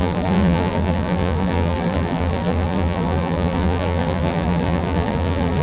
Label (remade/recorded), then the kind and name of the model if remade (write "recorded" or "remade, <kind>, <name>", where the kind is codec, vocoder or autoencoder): remade, vocoder, BigVGAN v2